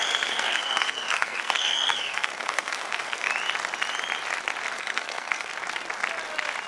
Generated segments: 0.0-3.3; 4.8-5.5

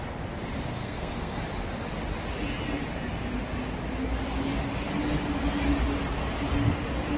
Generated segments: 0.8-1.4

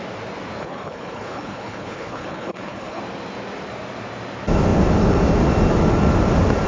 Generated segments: 0.6-3.0

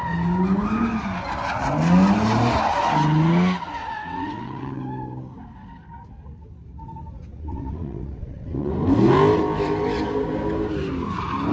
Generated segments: 3.8-4.8; 7.3-8.7

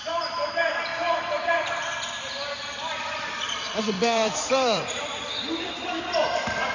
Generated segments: 0.0-5.4; 5.9-6.7

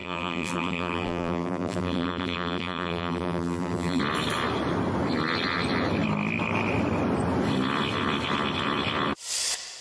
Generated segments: 0.0-4.0

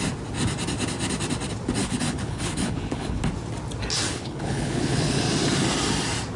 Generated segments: 1.8-3.2; 4.1-5.2